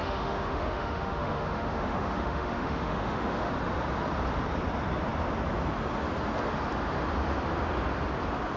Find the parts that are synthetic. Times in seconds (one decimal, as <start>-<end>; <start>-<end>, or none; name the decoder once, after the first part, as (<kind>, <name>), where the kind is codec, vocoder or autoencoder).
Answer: 0.0-3.5 (autoencoder, DAC-VAE)